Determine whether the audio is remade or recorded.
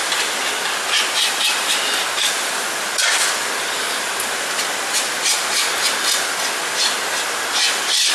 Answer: recorded